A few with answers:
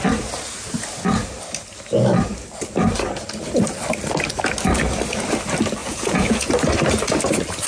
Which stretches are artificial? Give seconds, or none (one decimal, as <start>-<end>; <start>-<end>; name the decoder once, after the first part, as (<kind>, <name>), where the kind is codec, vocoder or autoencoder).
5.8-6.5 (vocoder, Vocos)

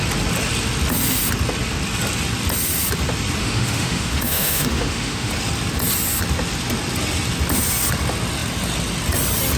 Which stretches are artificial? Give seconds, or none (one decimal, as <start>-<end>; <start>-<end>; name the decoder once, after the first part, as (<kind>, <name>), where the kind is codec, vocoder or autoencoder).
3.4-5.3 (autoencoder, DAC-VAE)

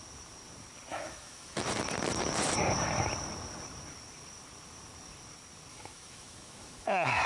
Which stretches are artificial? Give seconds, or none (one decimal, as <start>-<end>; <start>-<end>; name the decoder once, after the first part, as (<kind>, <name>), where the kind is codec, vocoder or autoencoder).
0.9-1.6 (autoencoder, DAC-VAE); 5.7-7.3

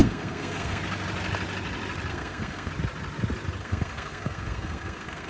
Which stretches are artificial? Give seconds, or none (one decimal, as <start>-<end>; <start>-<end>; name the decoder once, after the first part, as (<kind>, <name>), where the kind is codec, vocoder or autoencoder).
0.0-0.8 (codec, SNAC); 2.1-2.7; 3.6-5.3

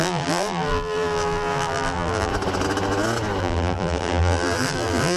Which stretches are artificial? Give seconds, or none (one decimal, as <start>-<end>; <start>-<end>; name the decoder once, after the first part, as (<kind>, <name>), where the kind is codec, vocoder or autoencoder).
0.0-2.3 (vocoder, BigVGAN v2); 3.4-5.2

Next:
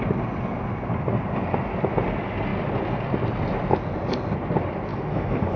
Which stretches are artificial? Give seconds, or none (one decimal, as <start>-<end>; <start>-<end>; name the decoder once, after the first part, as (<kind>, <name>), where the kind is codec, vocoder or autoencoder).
4.9-5.6 (autoencoder, DAC-VAE)